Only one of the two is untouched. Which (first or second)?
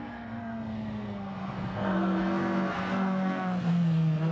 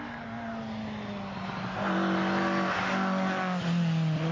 second